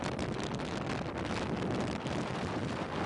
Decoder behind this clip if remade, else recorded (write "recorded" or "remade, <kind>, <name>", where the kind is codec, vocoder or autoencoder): recorded